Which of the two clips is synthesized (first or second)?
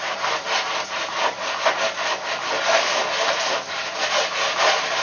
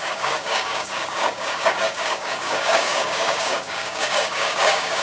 second